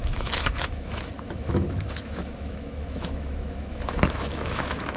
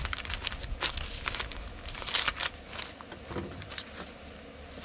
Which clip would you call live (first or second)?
second